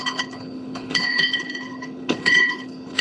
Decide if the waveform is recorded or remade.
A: remade